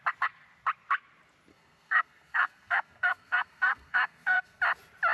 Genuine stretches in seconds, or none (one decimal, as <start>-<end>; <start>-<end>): 0.0-1.5; 4.6-5.1